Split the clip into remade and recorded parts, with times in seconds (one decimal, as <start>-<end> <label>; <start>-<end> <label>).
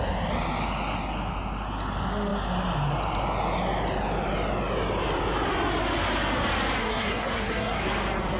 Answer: 0.0-6.8 recorded; 6.8-7.8 remade; 7.8-8.4 recorded